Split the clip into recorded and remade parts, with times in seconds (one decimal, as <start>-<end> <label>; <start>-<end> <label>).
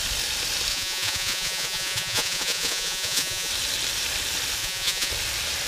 0.0-0.7 recorded; 0.7-3.5 remade; 3.5-4.6 recorded; 4.6-5.1 remade; 5.1-5.7 recorded